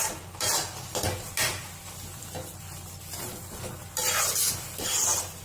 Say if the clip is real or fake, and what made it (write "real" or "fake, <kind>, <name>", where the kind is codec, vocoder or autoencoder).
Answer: real